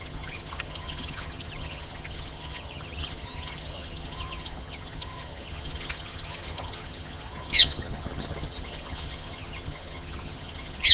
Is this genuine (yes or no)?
no